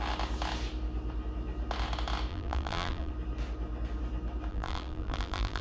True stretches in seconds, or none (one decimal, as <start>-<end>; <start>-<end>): 0.0-2.3; 3.1-4.5